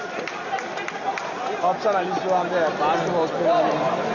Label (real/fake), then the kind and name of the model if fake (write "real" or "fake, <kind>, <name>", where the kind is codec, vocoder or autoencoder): real